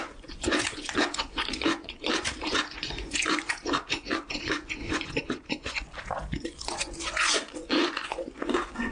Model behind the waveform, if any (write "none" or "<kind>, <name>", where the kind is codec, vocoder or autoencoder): vocoder, Vocos